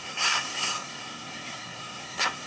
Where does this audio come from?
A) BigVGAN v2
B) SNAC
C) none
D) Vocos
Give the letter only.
B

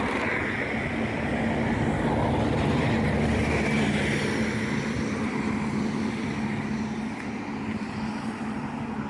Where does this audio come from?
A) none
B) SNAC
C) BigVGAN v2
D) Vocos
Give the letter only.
A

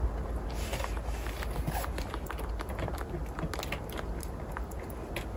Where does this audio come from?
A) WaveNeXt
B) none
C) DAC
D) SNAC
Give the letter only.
B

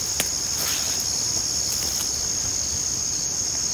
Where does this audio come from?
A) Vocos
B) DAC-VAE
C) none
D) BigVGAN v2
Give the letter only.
C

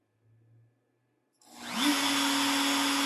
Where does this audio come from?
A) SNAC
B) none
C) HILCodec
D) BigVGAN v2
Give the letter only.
B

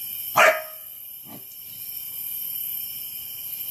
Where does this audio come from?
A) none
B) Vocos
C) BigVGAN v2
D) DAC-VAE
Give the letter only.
A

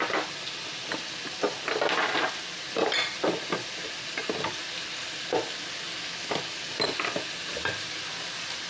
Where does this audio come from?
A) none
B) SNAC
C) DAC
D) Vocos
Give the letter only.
A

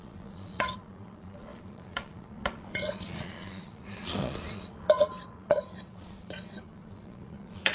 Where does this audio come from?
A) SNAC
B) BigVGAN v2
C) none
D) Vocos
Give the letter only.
D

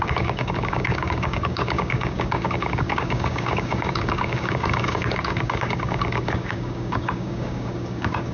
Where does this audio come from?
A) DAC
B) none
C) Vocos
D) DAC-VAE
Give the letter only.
A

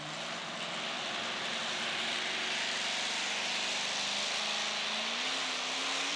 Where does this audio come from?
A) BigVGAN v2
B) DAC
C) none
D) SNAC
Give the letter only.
C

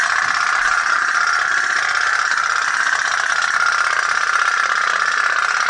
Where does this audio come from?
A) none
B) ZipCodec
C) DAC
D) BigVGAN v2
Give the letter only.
D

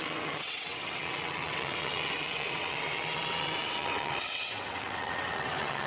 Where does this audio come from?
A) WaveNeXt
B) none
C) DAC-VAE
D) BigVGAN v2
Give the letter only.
A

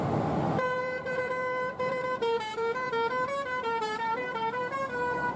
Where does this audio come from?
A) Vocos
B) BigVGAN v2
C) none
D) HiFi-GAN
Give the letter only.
B